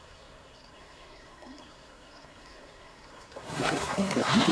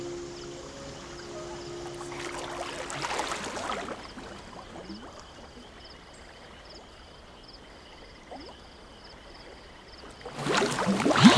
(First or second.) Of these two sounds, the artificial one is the first